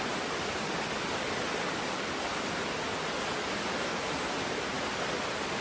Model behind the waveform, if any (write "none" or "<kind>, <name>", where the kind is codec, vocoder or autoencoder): none